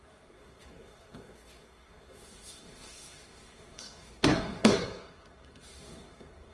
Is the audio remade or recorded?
remade